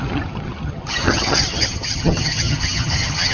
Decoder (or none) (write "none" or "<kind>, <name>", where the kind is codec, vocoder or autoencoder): vocoder, HiFi-GAN